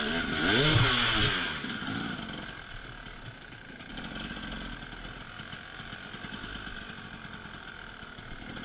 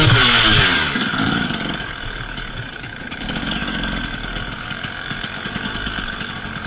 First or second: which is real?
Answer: first